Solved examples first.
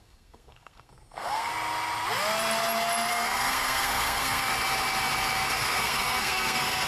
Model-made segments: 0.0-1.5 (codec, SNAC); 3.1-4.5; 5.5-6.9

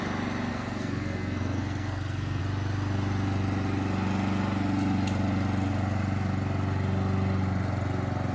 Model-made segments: 0.5-2.4 (codec, SNAC)

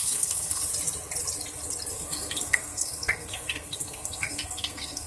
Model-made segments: 0.0-0.7 (codec, SNAC); 1.9-5.1

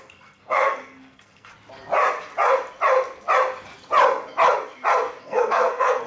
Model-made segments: 0.0-1.5 (codec, SNAC); 5.2-6.1

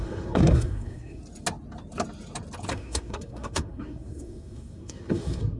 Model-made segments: 0.0-1.2 (codec, SNAC); 2.7-5.6

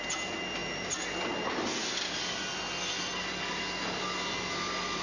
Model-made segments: none

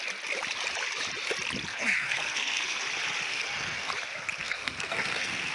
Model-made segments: 1.7-2.8 (codec, SNAC); 3.3-3.9; 4.4-5.5